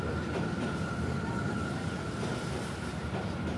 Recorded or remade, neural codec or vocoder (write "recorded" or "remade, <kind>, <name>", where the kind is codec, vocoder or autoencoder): recorded